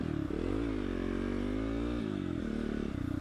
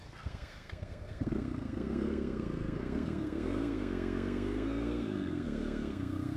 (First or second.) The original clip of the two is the first